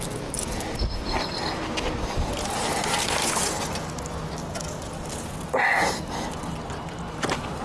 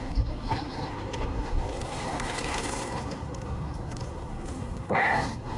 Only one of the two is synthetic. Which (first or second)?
second